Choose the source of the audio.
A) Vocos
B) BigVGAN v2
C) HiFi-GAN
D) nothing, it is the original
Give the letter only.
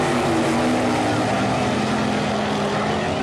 D